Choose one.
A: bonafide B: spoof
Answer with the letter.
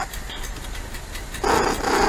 A